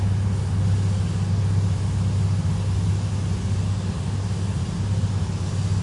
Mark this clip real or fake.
real